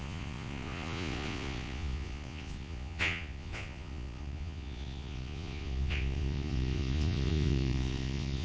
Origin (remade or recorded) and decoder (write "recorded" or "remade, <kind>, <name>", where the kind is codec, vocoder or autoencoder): remade, vocoder, Vocos